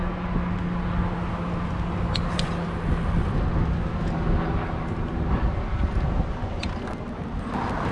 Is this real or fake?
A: real